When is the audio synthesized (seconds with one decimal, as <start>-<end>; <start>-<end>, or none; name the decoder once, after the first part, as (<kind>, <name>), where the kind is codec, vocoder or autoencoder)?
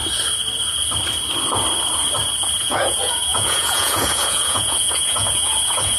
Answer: 2.6-6.0 (vocoder, Vocos)